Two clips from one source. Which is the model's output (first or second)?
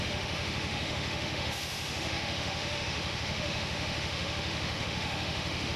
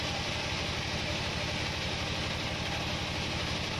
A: first